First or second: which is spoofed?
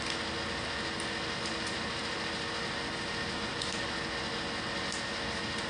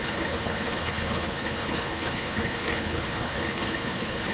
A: second